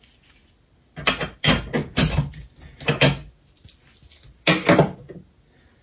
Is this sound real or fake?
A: real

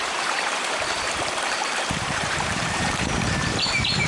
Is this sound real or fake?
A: fake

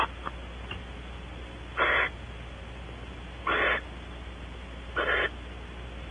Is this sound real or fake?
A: real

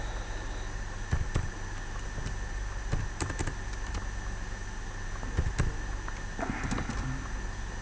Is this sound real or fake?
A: real